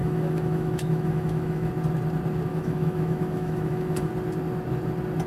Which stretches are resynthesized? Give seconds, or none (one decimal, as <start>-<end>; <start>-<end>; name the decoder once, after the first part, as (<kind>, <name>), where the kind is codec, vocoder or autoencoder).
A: 0.0-1.7 (autoencoder, DAC-VAE); 2.5-4.1